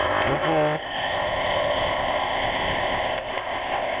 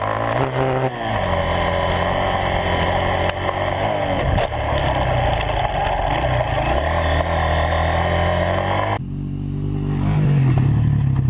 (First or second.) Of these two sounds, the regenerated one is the first